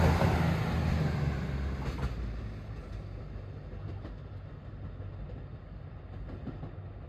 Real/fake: real